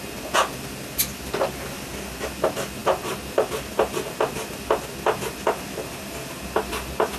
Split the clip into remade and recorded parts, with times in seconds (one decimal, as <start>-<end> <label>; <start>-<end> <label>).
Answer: 0.0-7.2 recorded